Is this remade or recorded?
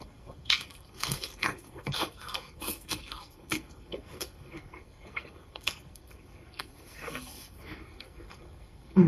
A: remade